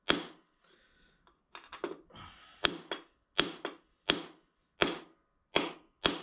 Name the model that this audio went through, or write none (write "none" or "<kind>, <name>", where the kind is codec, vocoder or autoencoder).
none